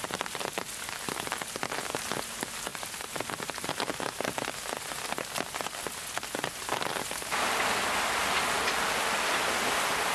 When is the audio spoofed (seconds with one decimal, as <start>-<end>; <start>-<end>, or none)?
none